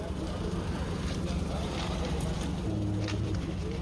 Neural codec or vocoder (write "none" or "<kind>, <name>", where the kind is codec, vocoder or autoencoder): vocoder, BigVGAN v2